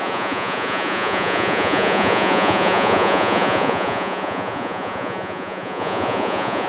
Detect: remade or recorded remade